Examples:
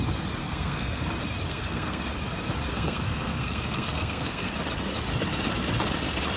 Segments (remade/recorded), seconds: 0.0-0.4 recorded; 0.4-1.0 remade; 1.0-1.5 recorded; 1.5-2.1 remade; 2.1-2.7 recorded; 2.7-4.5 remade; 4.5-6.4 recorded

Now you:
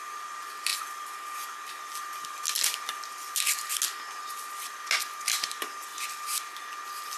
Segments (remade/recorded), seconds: 0.0-7.2 recorded

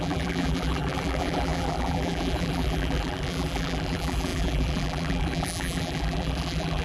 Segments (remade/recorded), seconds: 0.0-6.8 remade

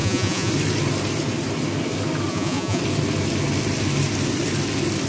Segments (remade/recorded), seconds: 0.0-0.5 remade; 0.5-2.3 recorded; 2.3-2.8 remade; 2.8-5.1 recorded

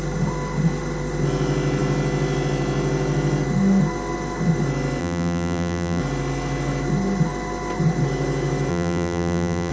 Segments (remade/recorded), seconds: 0.0-5.0 recorded; 5.0-6.0 remade; 6.0-8.7 recorded; 8.7-9.7 remade

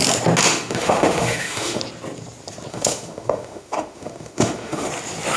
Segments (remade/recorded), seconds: 0.0-0.4 recorded; 0.4-1.8 remade; 1.8-2.7 recorded; 2.7-4.9 remade; 4.9-5.4 recorded